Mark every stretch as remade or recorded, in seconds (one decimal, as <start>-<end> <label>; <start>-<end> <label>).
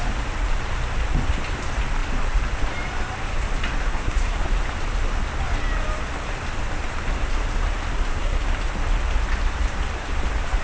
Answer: 0.0-3.8 recorded; 3.8-4.5 remade; 4.5-7.9 recorded; 7.9-8.4 remade; 8.4-10.6 recorded